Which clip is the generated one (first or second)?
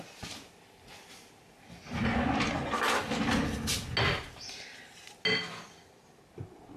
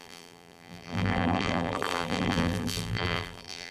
second